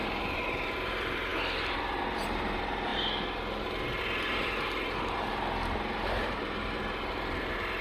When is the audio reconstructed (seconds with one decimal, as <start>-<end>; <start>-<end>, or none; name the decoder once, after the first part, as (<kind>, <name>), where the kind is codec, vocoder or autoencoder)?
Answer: 0.0-2.9 (vocoder, BigVGAN v2); 4.0-7.8